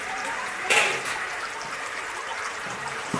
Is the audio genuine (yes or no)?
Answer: no